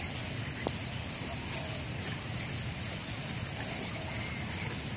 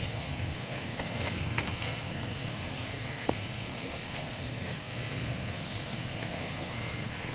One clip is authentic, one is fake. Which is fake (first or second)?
second